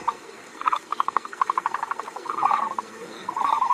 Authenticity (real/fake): fake